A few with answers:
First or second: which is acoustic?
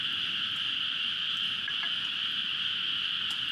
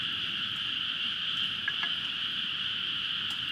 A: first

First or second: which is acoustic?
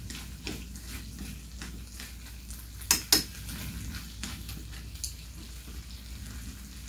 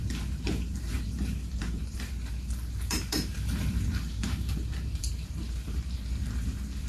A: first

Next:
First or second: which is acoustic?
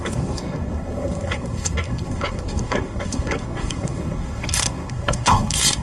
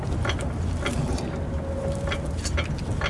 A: second